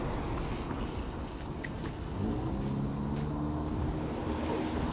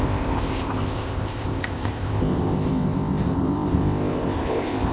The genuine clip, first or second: first